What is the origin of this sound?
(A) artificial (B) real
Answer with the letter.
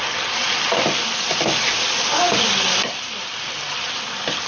B